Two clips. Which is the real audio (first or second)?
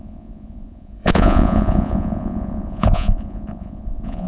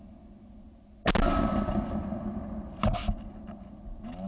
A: second